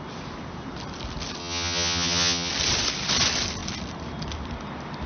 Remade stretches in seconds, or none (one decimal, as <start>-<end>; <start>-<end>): 1.4-2.5

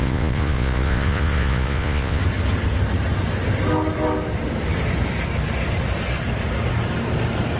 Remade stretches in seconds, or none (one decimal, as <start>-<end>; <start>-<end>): 0.0-2.2